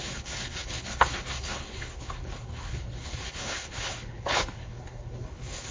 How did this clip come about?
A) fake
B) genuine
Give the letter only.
A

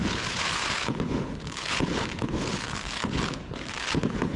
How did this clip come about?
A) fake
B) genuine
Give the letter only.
A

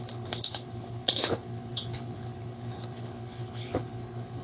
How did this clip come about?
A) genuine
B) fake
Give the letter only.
B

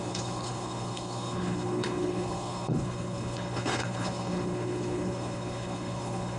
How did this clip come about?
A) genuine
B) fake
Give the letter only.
B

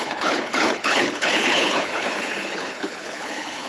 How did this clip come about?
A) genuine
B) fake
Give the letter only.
B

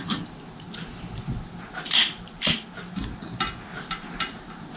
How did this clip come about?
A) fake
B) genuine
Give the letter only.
B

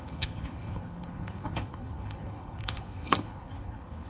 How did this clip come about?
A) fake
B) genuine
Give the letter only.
A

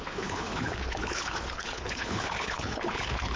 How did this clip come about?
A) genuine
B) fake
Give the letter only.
B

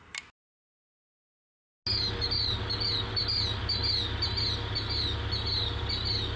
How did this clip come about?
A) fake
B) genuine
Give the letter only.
B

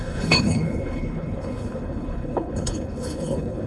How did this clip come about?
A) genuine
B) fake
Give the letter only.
B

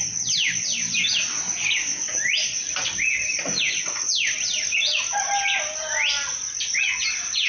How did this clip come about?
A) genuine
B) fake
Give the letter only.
A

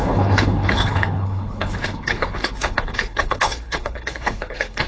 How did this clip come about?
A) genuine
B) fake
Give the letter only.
B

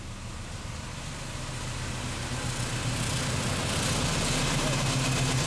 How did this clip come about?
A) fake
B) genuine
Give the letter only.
B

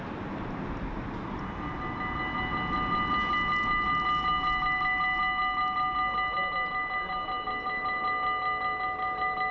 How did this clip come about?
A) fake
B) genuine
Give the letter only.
B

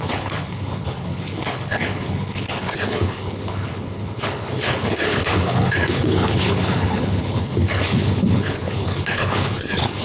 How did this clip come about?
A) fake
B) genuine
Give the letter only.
A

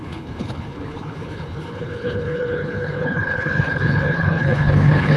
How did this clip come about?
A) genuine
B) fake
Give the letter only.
B